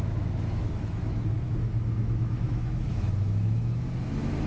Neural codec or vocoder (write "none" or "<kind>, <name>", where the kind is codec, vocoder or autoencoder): autoencoder, DAC-VAE